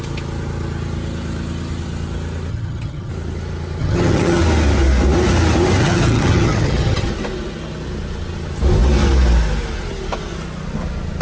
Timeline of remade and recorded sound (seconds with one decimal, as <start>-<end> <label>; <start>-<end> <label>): 0.0-2.5 recorded; 2.5-3.1 remade; 3.1-3.8 recorded; 3.8-4.4 remade; 4.4-5.8 recorded; 5.8-7.1 remade; 7.1-11.2 recorded